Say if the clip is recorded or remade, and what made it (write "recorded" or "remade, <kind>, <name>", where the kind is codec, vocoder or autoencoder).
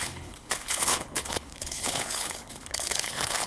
remade, codec, HILCodec